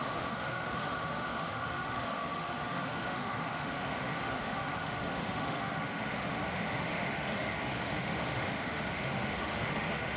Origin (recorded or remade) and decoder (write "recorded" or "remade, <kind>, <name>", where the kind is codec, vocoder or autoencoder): remade, autoencoder, DAC-VAE